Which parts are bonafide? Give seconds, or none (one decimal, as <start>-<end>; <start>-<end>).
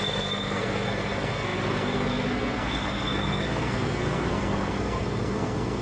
none